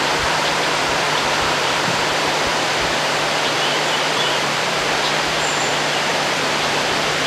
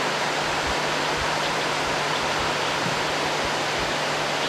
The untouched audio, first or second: second